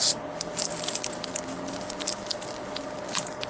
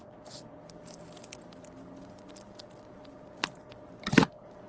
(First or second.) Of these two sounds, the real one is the second